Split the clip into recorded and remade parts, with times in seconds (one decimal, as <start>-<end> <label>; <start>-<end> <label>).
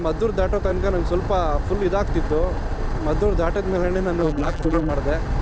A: 0.0-4.2 recorded; 4.2-4.9 remade; 4.9-5.4 recorded